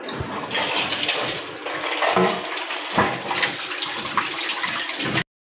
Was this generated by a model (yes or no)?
no